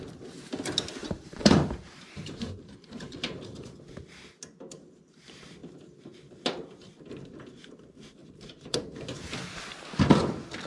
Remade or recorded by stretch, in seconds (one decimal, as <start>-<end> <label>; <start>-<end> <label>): 0.0-1.0 recorded; 1.0-3.8 remade; 3.8-8.2 recorded; 8.2-8.8 remade; 8.8-10.7 recorded